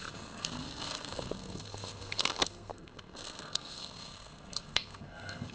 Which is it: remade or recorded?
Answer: remade